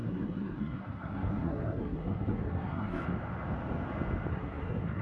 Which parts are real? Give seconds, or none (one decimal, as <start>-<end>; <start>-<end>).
3.0-4.3